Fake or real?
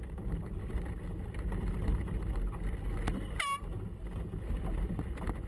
real